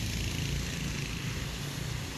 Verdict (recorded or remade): recorded